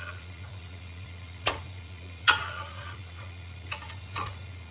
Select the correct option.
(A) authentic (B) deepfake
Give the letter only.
B